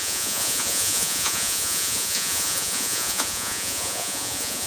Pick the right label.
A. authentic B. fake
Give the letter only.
B